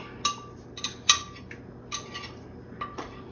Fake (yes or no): no